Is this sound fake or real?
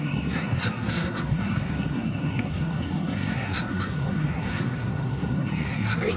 fake